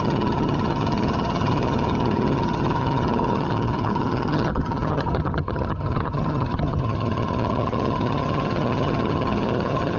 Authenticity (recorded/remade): remade